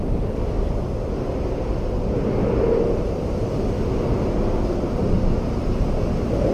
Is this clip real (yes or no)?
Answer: yes